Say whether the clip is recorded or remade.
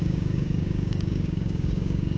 remade